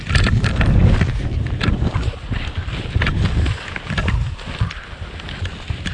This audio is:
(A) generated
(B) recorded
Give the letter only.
B